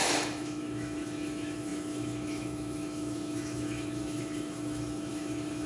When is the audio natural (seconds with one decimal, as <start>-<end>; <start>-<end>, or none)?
none